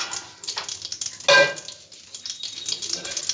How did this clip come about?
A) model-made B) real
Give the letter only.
B